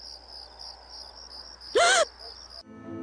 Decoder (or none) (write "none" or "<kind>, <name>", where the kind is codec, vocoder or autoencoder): none